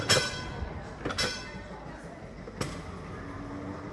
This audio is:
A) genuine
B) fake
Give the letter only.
A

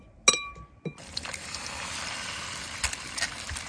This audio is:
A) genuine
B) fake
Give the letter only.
A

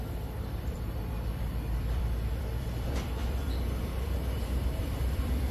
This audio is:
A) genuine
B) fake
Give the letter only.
B